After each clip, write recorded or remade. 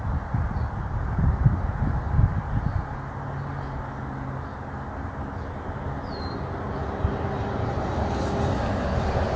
recorded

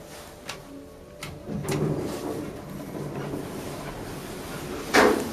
recorded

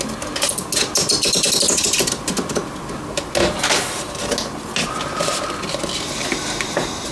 recorded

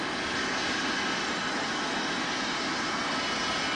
recorded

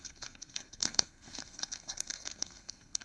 remade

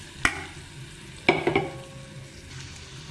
recorded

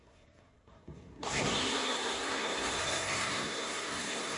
remade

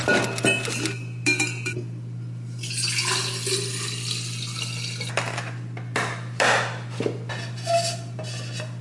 recorded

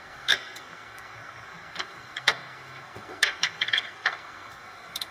remade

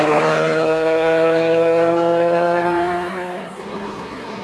remade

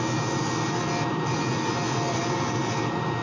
recorded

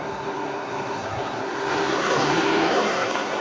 remade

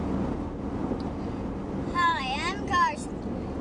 recorded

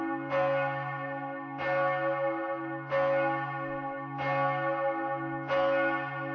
recorded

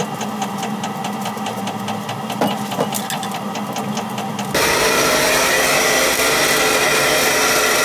recorded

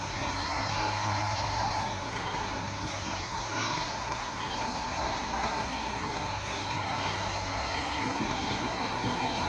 remade